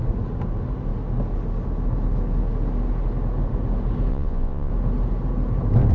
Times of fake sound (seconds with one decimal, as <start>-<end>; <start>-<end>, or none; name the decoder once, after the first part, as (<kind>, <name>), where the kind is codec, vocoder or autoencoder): 4.1-4.7 (vocoder, Vocos)